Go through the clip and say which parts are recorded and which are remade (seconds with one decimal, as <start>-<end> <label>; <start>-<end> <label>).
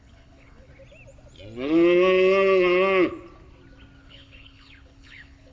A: 0.0-0.7 remade; 0.7-4.0 recorded; 4.0-5.5 remade